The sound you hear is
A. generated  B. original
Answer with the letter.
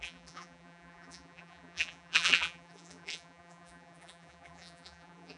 A